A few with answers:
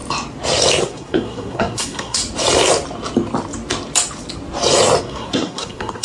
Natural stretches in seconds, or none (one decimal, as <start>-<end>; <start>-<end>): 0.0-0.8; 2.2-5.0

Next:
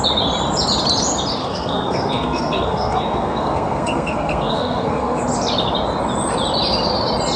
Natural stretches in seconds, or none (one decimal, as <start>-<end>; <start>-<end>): 0.0-1.4; 5.2-7.4

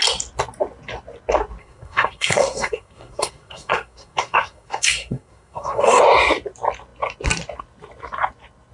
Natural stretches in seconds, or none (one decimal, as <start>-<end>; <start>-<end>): 0.0-1.6; 6.0-8.7

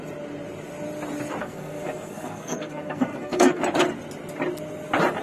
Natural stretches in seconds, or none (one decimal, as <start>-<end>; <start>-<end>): 0.0-1.4; 3.6-5.2